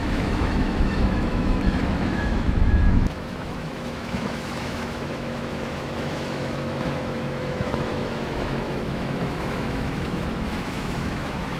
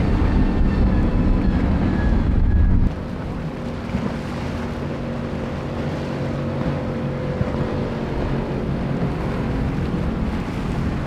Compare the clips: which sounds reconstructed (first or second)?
first